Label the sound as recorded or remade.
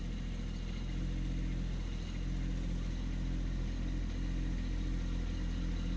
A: recorded